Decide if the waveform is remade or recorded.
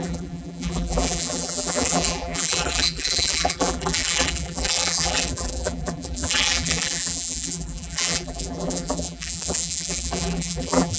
remade